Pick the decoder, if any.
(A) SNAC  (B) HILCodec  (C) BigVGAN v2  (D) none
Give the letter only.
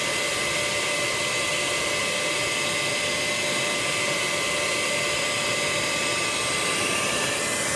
D